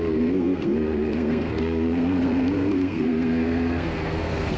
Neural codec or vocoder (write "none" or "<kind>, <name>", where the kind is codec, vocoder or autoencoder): codec, SNAC